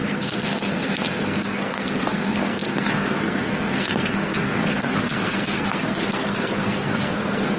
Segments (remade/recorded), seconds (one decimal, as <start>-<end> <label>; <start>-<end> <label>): 0.0-7.6 remade